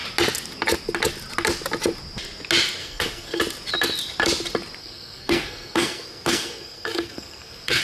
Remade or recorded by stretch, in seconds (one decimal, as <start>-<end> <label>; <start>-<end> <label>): 0.0-2.8 recorded; 2.8-3.4 remade; 3.4-4.8 recorded; 4.8-7.8 remade